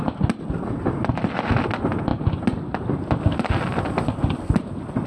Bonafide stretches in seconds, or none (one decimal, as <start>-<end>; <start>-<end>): 0.0-5.1